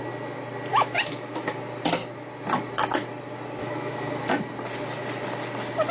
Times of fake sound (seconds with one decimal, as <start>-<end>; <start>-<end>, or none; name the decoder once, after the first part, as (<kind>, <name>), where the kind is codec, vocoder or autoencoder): 0.7-1.5 (autoencoder, DAC-VAE); 3.6-4.3